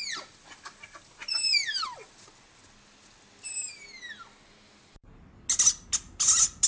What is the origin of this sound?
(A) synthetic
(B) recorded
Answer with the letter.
B